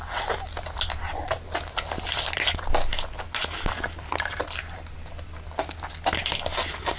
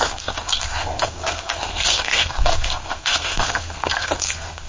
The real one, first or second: first